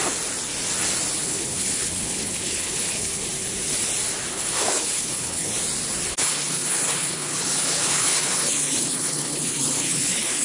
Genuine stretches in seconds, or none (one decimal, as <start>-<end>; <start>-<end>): 0.0-1.2; 3.3-4.3; 5.5-6.1